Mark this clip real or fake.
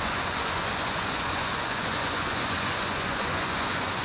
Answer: fake